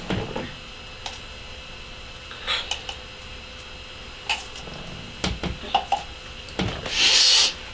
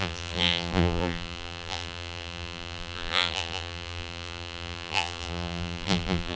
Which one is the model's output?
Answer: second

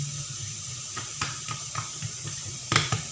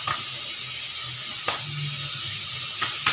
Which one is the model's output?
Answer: first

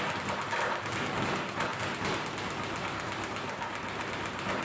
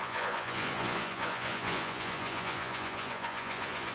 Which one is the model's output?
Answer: second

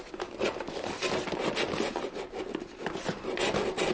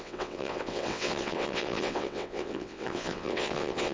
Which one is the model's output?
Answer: second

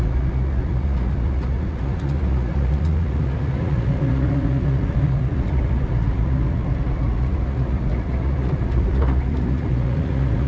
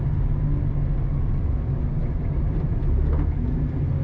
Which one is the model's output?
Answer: first